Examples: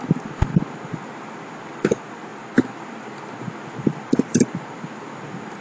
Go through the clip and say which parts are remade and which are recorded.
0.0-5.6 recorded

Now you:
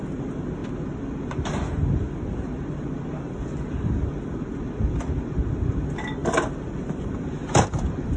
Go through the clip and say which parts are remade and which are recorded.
0.0-8.2 recorded

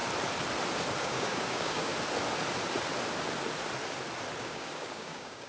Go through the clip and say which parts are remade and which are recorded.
0.0-1.0 recorded; 1.0-1.9 remade; 1.9-4.4 recorded; 4.4-5.5 remade